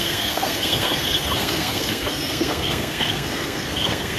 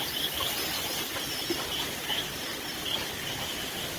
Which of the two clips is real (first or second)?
second